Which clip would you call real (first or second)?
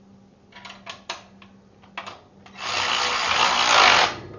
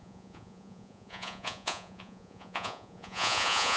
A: first